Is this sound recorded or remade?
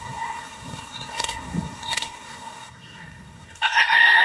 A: remade